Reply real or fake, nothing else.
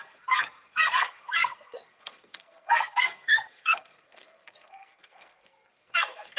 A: fake